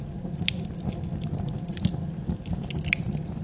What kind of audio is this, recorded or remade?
recorded